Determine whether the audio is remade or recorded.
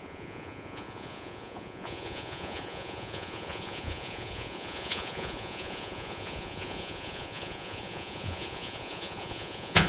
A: remade